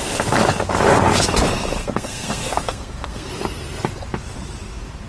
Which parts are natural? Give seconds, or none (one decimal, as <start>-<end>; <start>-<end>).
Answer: 0.0-1.8; 3.3-5.1